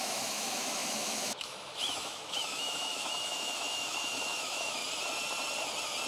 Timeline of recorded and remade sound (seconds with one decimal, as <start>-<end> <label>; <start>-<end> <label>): 0.0-4.8 remade; 4.8-6.1 recorded